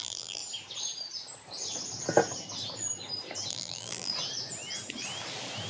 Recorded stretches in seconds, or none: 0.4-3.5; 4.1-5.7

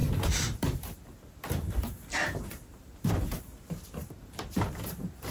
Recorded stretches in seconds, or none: none

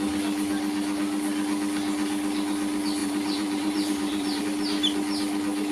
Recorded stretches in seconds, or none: 0.0-3.0; 4.4-5.7

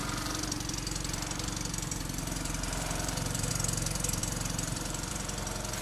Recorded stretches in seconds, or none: none